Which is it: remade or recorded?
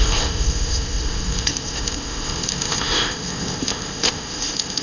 remade